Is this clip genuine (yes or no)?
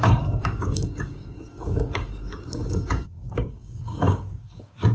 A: no